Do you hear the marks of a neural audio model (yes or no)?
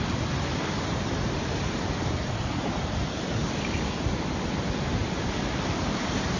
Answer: no